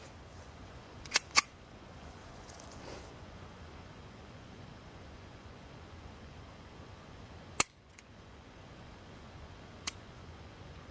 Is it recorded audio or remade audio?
remade